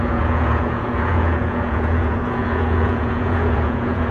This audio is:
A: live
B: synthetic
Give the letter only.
B